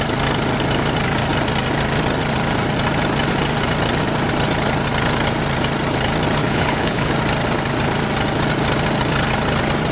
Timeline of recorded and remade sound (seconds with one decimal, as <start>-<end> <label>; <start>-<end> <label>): 0.0-6.4 recorded; 6.4-7.1 remade; 7.1-9.9 recorded